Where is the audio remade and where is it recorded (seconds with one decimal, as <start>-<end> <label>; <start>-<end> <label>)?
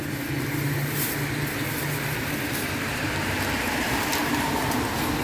0.0-5.2 recorded